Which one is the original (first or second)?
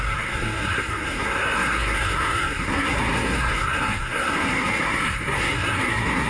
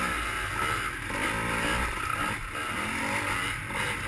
second